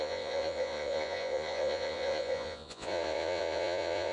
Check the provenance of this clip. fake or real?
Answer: fake